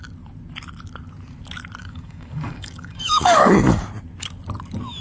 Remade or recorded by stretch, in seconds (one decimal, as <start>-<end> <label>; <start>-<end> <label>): 0.0-1.8 recorded; 1.8-3.8 remade; 3.8-5.0 recorded